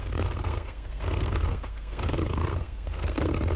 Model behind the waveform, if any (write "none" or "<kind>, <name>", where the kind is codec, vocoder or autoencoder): codec, SNAC